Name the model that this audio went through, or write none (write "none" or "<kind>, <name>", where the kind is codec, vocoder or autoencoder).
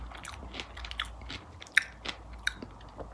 none